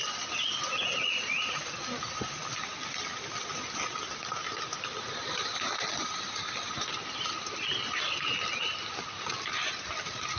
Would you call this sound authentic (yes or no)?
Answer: yes